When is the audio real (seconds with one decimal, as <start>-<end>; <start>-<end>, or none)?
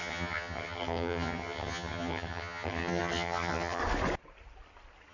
3.8-5.1